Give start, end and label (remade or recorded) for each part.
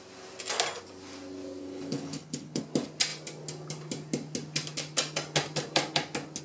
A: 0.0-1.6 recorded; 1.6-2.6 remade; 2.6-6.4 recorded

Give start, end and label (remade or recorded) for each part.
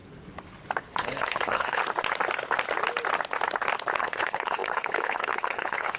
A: 0.0-0.8 recorded; 0.8-1.8 remade; 1.8-4.0 recorded; 4.0-6.0 remade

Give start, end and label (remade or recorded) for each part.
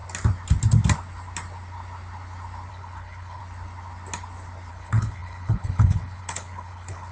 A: 0.0-2.7 recorded; 2.7-3.4 remade; 3.4-4.7 recorded; 4.7-7.1 remade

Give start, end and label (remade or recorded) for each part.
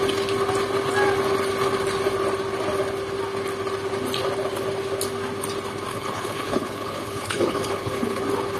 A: 0.0-5.9 recorded; 5.9-8.2 remade; 8.2-8.6 recorded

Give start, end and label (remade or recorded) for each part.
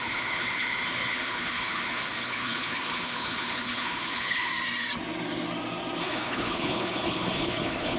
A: 0.0-4.5 remade; 4.5-6.0 recorded; 6.0-8.0 remade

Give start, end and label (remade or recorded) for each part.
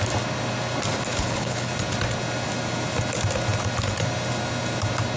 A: 0.0-1.1 recorded; 1.1-1.7 remade; 1.7-5.2 recorded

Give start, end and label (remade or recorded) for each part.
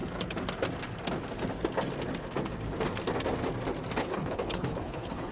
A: 0.0-4.0 recorded; 4.0-5.3 remade